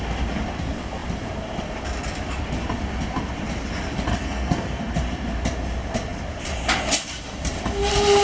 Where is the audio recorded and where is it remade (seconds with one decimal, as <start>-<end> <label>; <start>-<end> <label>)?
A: 0.0-4.1 recorded; 4.1-4.8 remade; 4.8-8.2 recorded